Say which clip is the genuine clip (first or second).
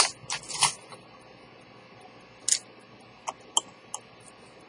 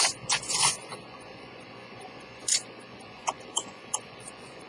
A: first